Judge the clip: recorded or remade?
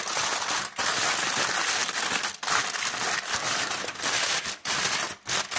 recorded